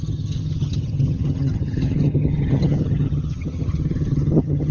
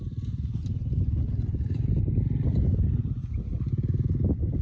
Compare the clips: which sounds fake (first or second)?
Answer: first